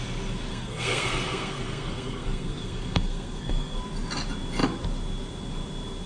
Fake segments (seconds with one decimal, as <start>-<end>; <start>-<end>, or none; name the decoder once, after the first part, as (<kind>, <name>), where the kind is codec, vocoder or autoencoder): 0.5-3.8 (codec, SNAC)